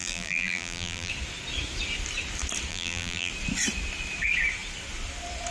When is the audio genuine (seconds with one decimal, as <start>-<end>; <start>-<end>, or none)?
1.1-2.7; 3.3-5.5